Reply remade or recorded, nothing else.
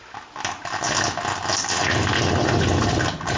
recorded